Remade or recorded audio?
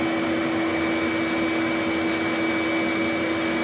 recorded